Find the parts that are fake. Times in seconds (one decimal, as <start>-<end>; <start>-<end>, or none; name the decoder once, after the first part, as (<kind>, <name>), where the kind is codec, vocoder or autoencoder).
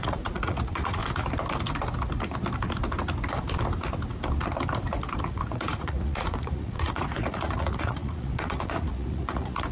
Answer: 0.0-1.0 (vocoder, Vocos); 5.3-9.7